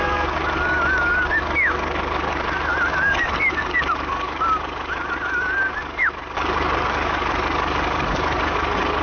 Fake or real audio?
fake